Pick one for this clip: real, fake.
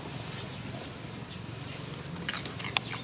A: real